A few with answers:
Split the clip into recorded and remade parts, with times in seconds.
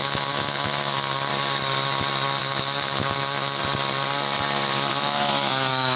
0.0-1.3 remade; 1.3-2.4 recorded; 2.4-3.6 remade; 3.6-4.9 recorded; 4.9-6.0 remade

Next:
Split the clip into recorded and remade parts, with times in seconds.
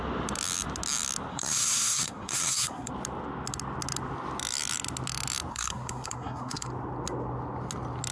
0.0-1.3 recorded; 1.3-2.9 remade; 2.9-5.5 recorded; 5.5-6.7 remade; 6.7-8.1 recorded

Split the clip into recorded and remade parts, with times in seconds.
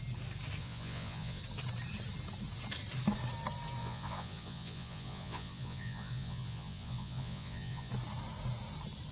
0.0-0.6 recorded; 0.6-1.4 remade; 1.4-3.8 recorded; 3.8-7.9 remade; 7.9-9.1 recorded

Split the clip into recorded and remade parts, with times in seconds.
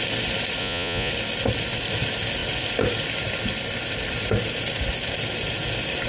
0.0-0.6 recorded; 0.6-1.1 remade; 1.1-6.1 recorded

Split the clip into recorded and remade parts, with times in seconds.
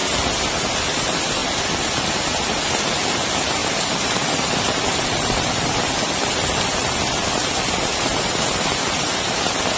0.0-1.4 recorded; 1.4-2.1 remade; 2.1-3.6 recorded; 3.6-8.2 remade; 8.2-9.8 recorded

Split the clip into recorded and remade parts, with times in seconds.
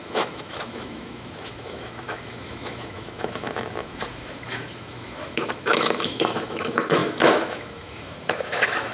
0.0-8.9 remade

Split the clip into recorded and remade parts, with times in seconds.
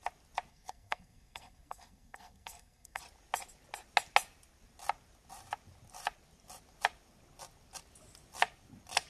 0.0-0.5 recorded; 0.5-3.0 remade; 3.0-9.1 recorded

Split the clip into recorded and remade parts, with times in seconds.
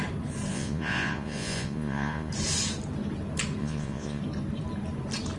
0.0-0.5 recorded; 0.5-2.3 remade; 2.3-3.6 recorded; 3.6-4.2 remade; 4.2-5.4 recorded